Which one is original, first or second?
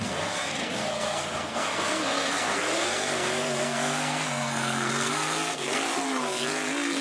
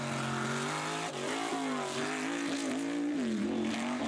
second